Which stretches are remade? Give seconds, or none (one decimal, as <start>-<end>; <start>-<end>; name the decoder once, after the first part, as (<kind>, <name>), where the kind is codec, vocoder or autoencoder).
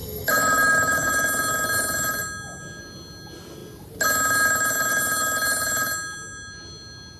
0.0-1.1 (autoencoder, DAC-VAE)